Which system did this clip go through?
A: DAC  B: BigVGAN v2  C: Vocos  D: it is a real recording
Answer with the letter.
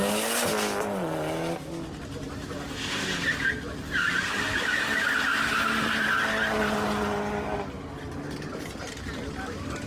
D